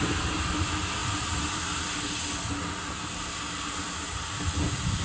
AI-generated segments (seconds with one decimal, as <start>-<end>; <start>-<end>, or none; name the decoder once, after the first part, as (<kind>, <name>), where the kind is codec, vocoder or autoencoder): none